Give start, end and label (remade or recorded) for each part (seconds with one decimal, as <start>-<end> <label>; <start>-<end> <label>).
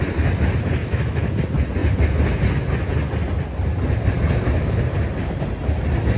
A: 0.0-0.8 recorded; 0.8-1.3 remade; 1.3-6.2 recorded